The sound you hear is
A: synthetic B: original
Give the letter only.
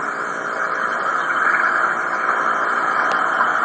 B